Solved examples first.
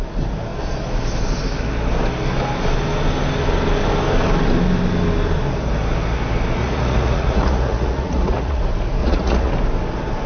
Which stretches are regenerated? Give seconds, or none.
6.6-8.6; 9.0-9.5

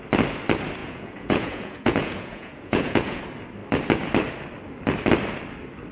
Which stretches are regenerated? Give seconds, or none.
0.8-3.2

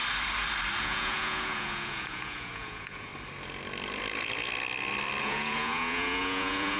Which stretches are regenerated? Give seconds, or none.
0.8-3.1; 5.2-6.8

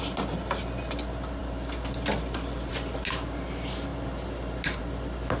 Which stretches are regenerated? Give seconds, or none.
none

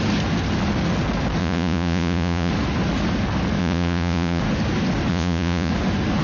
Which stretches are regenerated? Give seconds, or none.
1.4-2.5; 3.6-4.4; 5.1-5.7

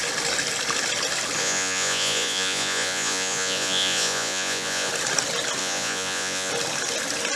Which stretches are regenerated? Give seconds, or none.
1.4-4.9; 5.6-6.5

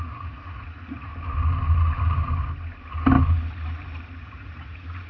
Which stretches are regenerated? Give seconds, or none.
0.0-1.1; 4.2-5.1